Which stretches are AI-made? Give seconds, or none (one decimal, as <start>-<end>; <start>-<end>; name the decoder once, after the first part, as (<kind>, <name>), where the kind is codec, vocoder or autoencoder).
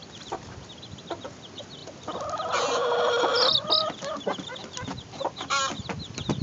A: none